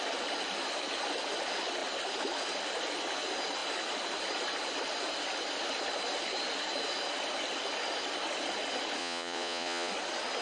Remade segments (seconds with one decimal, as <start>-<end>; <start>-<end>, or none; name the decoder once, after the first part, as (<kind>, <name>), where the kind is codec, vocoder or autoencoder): 9.0-9.9 (vocoder, Vocos)